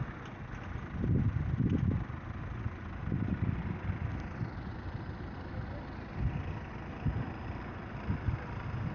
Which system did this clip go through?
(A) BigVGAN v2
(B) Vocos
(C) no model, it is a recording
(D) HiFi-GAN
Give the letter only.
C